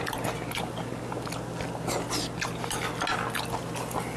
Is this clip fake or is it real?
real